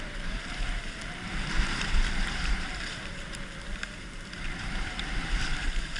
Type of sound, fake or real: fake